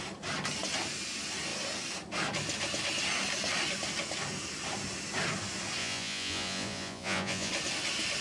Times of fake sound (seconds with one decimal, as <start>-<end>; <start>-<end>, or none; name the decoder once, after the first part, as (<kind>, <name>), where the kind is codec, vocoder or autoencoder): 5.8-7.5 (vocoder, Vocos)